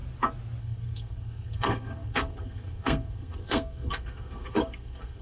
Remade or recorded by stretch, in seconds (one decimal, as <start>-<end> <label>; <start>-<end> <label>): 0.0-0.6 recorded; 0.6-5.2 remade